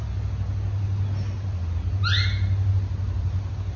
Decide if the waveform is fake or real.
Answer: real